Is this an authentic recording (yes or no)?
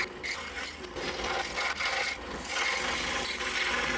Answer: yes